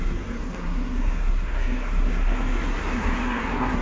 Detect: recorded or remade remade